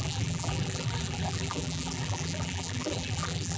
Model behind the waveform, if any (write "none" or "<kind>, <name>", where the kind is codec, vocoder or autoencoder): vocoder, BigVGAN v2